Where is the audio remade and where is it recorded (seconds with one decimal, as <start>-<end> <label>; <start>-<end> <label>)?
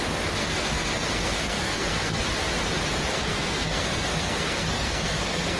0.0-0.4 recorded; 0.4-2.2 remade; 2.2-3.1 recorded; 3.1-5.6 remade